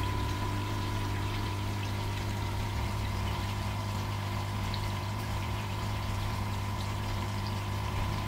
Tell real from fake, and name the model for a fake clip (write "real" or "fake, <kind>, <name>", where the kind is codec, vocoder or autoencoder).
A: fake, vocoder, BigVGAN v2